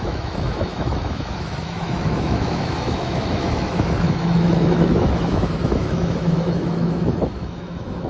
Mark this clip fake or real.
fake